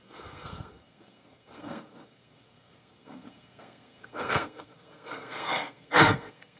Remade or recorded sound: remade